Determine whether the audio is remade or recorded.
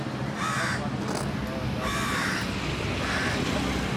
recorded